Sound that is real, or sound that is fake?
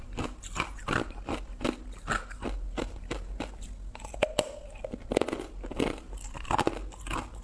real